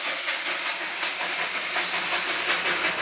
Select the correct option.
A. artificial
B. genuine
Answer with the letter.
B